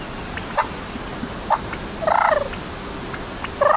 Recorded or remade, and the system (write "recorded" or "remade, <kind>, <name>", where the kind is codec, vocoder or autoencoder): recorded